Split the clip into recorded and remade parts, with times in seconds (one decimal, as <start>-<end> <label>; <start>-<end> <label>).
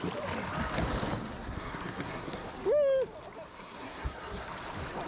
0.0-1.3 recorded; 1.3-2.5 remade; 2.5-3.5 recorded; 3.5-4.5 remade; 4.5-5.1 recorded